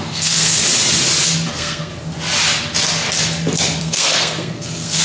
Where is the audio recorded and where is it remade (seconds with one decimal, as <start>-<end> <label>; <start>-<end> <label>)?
0.0-0.6 remade; 0.6-1.5 recorded; 1.5-1.9 remade; 1.9-3.8 recorded; 3.8-5.0 remade